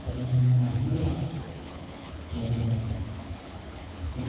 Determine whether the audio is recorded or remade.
remade